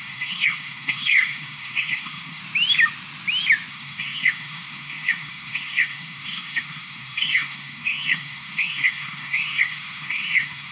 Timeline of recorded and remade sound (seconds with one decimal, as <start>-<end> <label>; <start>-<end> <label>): 0.0-2.4 remade; 2.4-3.7 recorded; 3.7-10.7 remade